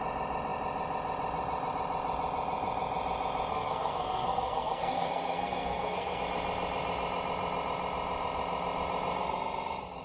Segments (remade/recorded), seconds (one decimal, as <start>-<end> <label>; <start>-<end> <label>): 0.0-3.5 recorded; 3.5-6.2 remade; 6.2-10.0 recorded